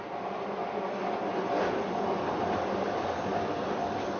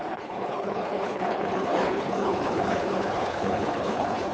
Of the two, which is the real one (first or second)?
first